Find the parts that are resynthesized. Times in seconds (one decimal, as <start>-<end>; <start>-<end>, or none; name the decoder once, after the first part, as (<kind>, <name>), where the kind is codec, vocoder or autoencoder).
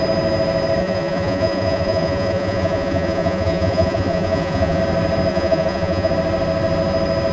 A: 0.8-4.8 (vocoder, Vocos); 5.3-6.1